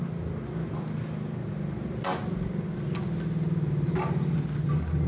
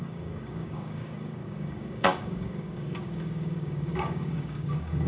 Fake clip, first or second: second